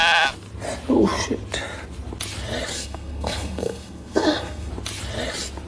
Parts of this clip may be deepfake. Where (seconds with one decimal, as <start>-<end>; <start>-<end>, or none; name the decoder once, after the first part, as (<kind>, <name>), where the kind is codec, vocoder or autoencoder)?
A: 2.7-4.7 (codec, SNAC)